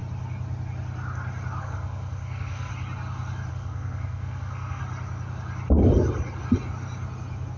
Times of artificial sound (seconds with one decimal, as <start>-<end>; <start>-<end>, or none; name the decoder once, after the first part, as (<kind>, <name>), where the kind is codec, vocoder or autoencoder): 1.6-2.7 (codec, SNAC); 3.5-4.8